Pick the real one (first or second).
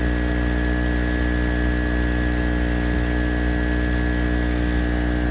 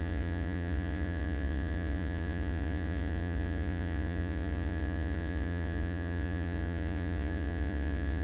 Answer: first